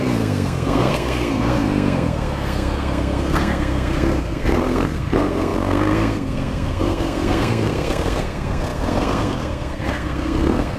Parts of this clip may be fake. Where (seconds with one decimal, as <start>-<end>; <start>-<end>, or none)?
0.0-10.8